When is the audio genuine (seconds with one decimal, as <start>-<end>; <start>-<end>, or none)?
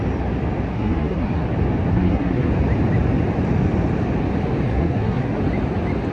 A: 0.0-0.7; 1.5-1.9; 2.5-4.7; 5.4-6.1